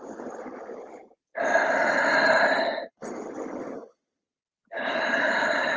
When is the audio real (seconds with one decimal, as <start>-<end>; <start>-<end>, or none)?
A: 0.0-5.8